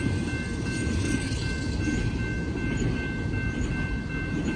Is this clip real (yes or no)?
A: yes